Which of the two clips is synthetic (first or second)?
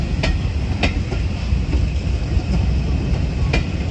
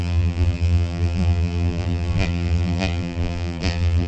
second